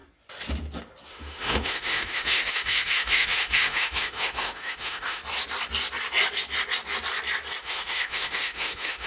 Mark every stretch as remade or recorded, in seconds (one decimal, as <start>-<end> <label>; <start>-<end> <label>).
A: 0.0-1.1 recorded; 1.1-5.2 remade; 5.2-7.6 recorded; 7.6-9.1 remade